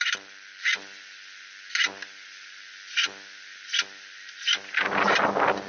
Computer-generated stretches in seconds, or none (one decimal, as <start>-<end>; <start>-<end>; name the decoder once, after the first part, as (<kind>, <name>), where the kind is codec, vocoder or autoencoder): none